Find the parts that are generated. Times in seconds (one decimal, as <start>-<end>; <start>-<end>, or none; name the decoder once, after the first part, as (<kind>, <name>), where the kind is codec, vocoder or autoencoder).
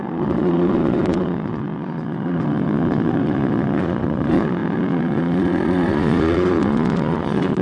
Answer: 0.0-7.6 (vocoder, Vocos)